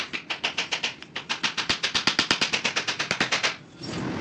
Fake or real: real